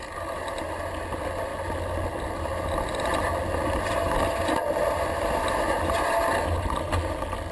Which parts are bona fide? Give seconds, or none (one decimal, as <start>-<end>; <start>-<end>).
0.0-7.5